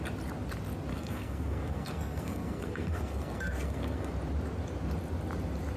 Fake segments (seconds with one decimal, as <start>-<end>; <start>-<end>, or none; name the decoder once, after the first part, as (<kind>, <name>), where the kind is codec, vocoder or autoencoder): 0.9-4.1 (codec, SNAC)